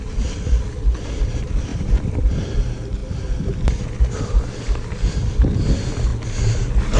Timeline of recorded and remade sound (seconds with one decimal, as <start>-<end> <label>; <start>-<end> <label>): 0.0-7.0 recorded